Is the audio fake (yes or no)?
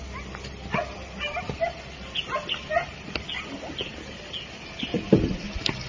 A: no